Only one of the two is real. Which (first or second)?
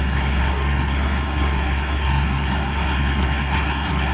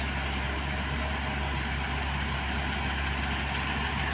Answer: second